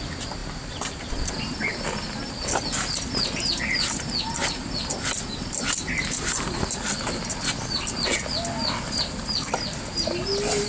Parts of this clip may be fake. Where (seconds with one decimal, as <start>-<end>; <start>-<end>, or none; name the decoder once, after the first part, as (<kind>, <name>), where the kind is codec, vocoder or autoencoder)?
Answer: none

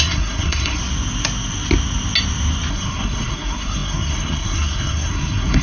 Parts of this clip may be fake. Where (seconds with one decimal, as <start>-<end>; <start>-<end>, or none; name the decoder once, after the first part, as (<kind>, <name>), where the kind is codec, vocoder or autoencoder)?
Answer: 0.0-0.8 (codec, SNAC); 2.7-5.6

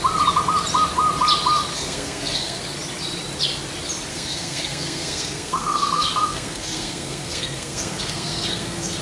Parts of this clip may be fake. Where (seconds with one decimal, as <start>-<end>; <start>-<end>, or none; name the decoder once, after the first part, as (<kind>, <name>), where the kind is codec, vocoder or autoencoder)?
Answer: 1.7-2.6 (codec, SNAC); 4.1-9.0

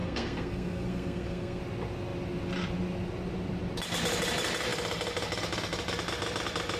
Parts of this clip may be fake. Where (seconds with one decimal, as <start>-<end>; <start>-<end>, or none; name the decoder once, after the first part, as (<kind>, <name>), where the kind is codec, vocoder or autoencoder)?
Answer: 0.0-1.6 (codec, SNAC)

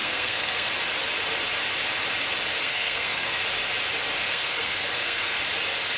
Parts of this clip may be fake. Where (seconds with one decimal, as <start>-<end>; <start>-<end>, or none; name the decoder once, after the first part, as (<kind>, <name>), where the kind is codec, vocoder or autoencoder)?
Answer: 0.0-0.7 (codec, SNAC); 2.6-3.4; 4.2-5.4

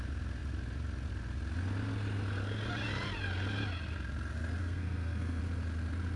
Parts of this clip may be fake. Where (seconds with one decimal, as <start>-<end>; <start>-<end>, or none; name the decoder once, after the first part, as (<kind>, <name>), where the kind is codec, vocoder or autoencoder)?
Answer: 4.6-5.4 (codec, SNAC)

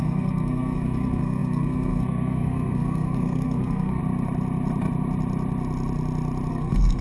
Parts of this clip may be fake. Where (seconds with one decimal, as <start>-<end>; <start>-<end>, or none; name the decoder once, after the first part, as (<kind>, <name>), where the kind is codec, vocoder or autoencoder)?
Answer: 0.0-4.0 (codec, SNAC); 6.5-7.0

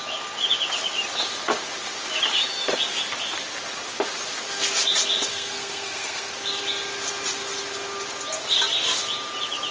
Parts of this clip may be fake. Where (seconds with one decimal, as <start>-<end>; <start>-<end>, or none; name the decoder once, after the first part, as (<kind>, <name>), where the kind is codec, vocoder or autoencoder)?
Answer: 5.3-6.3 (codec, SNAC)